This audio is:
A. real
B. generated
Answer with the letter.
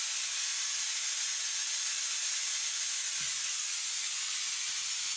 A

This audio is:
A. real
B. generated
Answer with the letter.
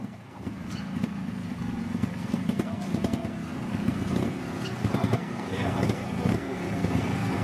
B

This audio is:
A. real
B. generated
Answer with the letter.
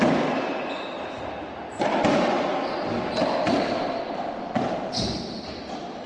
A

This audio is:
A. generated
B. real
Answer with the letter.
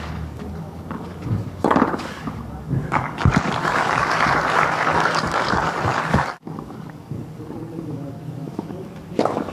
A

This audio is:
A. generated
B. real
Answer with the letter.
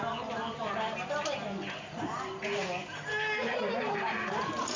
B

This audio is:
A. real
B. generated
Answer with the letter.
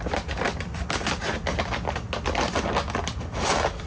A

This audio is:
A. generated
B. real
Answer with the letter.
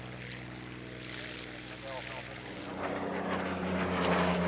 B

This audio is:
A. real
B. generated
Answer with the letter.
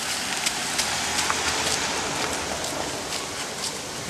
A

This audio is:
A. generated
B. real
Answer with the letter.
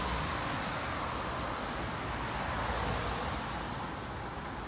B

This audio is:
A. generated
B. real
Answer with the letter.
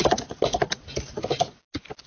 B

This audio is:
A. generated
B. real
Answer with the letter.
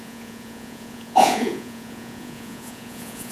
A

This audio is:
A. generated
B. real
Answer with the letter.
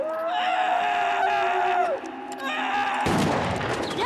B